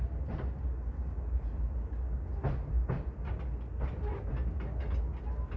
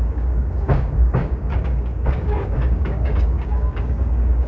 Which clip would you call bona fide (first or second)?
first